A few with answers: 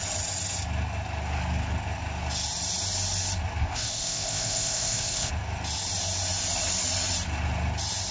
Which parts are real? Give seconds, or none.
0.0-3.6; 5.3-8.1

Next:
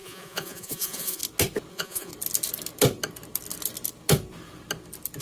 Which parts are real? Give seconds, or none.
1.2-1.7; 2.1-5.2

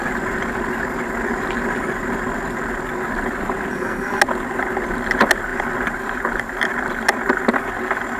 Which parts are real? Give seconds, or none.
0.0-3.7; 4.2-8.2

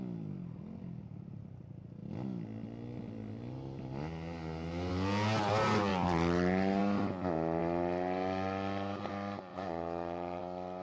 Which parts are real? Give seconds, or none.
0.0-9.5; 10.4-10.8